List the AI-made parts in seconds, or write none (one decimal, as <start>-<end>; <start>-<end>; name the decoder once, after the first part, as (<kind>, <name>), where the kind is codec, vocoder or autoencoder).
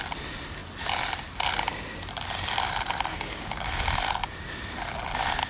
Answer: 3.1-3.8 (codec, DAC)